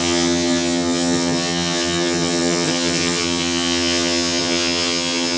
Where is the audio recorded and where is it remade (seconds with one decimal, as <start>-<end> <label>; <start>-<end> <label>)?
0.0-5.4 remade

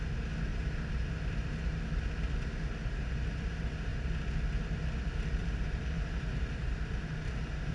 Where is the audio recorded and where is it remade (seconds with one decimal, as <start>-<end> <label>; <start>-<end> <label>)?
0.0-0.5 recorded; 0.5-1.9 remade; 1.9-5.4 recorded; 5.4-7.7 remade

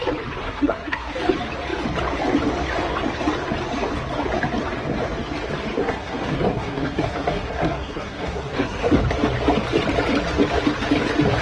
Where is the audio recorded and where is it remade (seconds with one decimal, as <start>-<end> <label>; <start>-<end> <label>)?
0.0-0.4 recorded; 0.4-1.1 remade; 1.1-5.8 recorded; 5.8-9.0 remade; 9.0-11.4 recorded

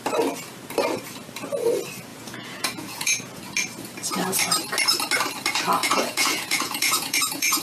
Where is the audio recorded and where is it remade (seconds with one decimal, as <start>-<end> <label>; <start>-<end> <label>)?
0.0-2.1 recorded; 2.1-3.4 remade; 3.4-5.8 recorded; 5.8-7.6 remade